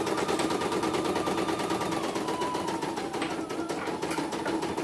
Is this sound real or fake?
real